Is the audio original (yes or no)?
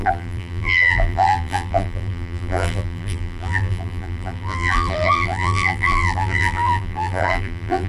no